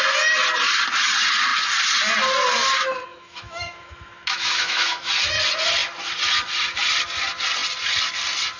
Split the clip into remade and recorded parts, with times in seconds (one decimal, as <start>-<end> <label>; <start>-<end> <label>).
0.0-3.1 recorded; 3.1-5.1 remade; 5.1-8.6 recorded